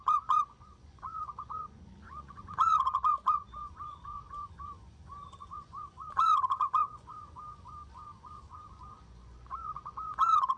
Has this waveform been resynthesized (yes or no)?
yes